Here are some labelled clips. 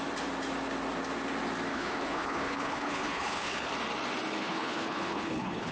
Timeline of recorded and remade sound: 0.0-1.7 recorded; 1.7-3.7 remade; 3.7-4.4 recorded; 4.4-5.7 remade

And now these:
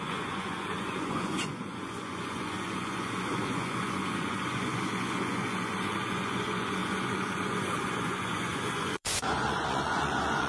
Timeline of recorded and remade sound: 0.0-10.5 remade

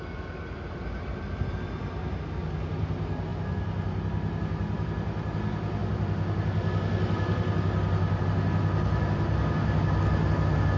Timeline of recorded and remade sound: 0.0-10.8 recorded

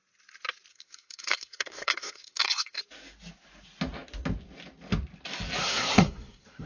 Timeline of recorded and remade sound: 0.0-0.7 recorded; 0.7-2.8 remade; 2.8-5.6 recorded; 5.6-6.7 remade

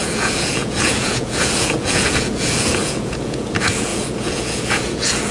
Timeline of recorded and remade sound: 0.0-5.3 remade

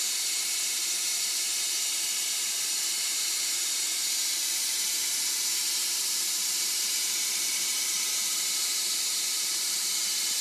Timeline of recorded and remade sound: 0.0-10.4 remade